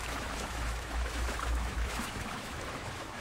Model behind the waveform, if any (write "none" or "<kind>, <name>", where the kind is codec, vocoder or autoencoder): autoencoder, DAC-VAE